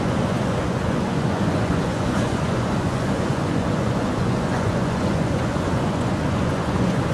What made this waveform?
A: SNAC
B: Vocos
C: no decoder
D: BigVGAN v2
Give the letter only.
B